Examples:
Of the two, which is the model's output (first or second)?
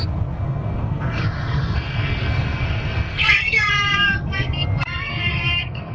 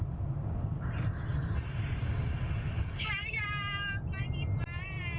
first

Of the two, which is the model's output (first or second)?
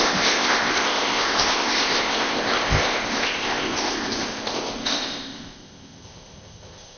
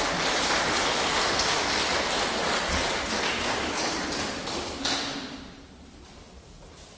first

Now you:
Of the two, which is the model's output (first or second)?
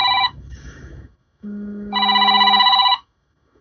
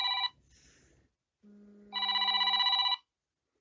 first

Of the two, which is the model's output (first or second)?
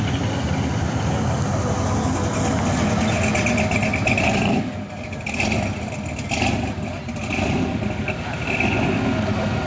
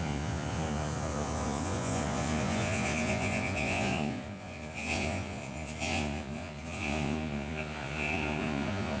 second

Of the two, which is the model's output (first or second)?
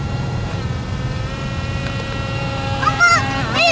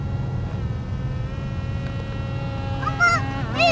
first